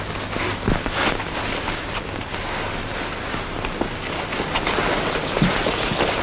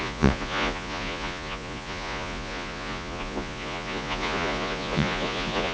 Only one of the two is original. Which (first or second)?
first